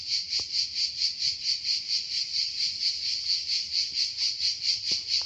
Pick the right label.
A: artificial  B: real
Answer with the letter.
B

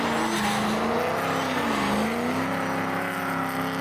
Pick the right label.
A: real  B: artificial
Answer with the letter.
A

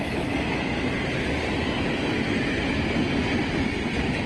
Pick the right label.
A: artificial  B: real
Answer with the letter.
B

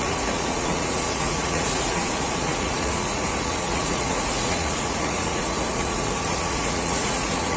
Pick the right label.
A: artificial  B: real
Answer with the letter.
A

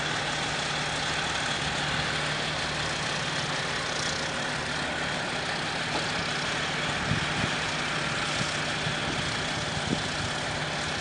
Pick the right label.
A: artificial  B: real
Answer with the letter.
B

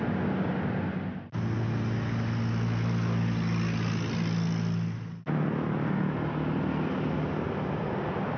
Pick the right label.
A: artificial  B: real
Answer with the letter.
B